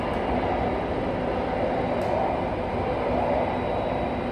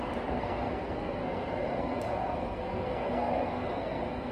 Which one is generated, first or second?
second